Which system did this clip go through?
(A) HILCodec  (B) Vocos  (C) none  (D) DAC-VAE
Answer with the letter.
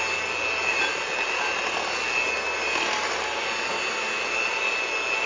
C